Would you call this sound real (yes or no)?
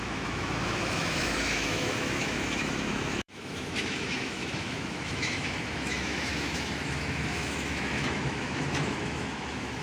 no